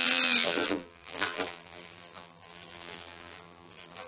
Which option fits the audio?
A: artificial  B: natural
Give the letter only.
A